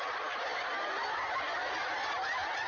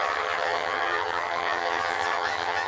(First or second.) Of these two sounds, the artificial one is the second